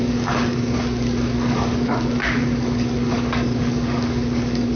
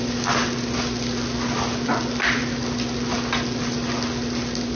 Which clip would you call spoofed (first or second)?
first